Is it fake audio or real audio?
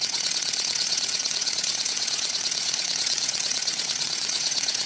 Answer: fake